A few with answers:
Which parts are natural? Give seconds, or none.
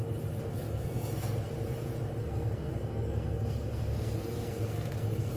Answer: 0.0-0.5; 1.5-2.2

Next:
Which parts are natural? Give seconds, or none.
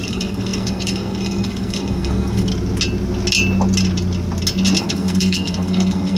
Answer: 2.5-4.8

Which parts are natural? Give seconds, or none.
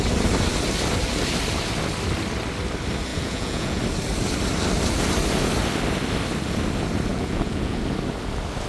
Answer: 0.0-3.1; 3.8-7.1; 7.8-8.7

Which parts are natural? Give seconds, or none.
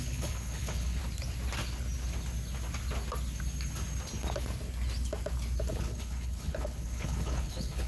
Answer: 1.0-5.7